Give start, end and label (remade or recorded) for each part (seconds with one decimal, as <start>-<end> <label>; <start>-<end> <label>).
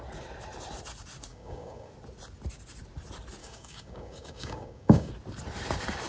0.0-1.3 recorded; 1.3-1.9 remade; 1.9-3.4 recorded; 3.4-5.1 remade; 5.1-6.1 recorded